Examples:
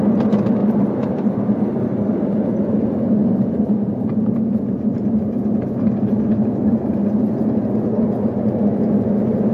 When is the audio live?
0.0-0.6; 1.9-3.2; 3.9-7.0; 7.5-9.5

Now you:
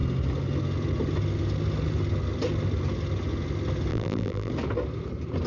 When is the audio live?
0.0-3.9; 4.5-5.5

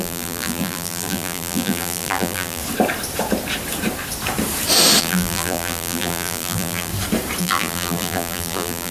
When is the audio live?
2.6-5.0; 6.9-7.4

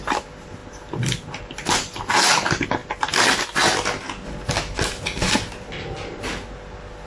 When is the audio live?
0.0-7.1

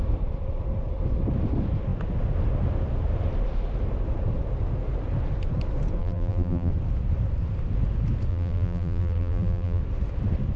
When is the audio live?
0.0-6.0; 6.7-8.3; 9.8-10.6

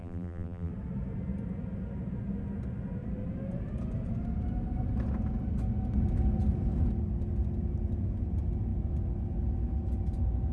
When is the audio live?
0.7-10.5